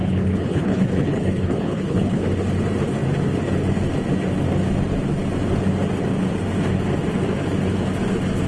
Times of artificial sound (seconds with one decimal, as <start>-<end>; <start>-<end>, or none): 0.0-2.2